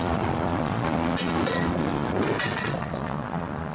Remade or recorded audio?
remade